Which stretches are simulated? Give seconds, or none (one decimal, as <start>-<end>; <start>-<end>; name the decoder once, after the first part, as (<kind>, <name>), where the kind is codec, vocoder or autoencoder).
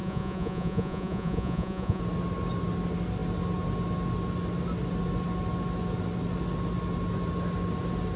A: 0.0-2.0 (vocoder, Vocos)